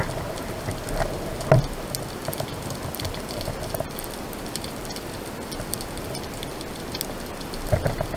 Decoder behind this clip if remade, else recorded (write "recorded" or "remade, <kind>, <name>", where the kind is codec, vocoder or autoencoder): recorded